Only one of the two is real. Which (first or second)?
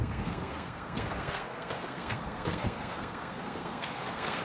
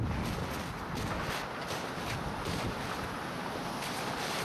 second